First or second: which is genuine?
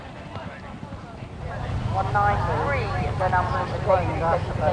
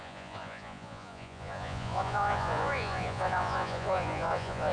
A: first